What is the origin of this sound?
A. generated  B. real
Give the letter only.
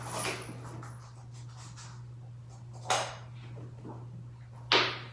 B